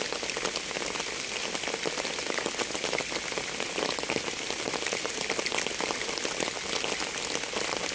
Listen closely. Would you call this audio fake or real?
real